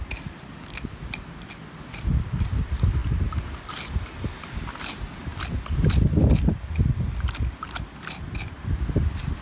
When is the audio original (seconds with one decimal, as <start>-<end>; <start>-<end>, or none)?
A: 0.0-9.4